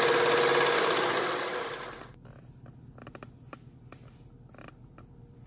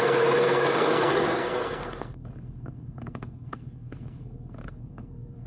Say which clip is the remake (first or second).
second